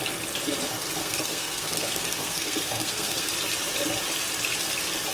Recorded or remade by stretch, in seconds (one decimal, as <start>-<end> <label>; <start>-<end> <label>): 0.0-1.0 recorded; 1.0-3.3 remade; 3.3-5.1 recorded